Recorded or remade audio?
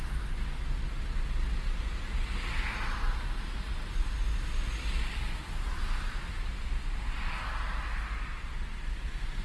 recorded